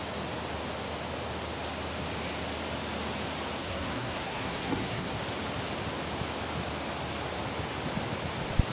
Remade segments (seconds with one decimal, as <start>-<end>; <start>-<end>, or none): 3.6-5.2